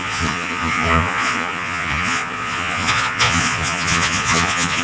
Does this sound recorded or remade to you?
remade